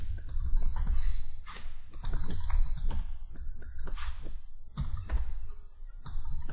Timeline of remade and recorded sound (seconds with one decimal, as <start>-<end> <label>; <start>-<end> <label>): 0.0-6.5 recorded